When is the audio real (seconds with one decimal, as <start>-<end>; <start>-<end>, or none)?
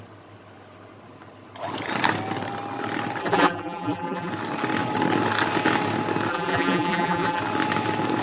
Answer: 0.0-3.2; 4.3-6.3; 7.4-8.2